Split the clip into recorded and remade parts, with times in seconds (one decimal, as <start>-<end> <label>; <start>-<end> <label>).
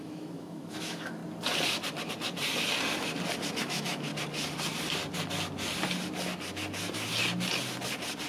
0.0-1.2 remade; 1.2-3.6 recorded; 3.6-4.1 remade; 4.1-8.3 recorded